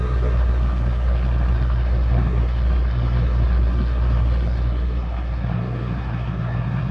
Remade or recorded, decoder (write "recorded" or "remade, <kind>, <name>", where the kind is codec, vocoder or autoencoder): remade, codec, SNAC